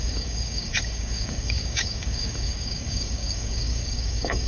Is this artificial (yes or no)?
yes